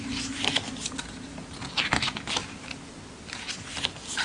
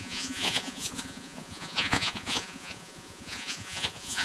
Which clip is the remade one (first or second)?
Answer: second